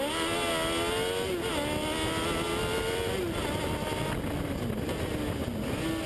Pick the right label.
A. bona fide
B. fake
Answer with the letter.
A